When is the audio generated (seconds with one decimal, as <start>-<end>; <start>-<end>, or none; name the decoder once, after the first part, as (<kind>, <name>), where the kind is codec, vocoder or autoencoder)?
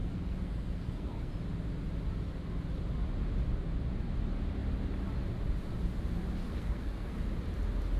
0.0-1.3 (codec, SNAC); 6.4-7.2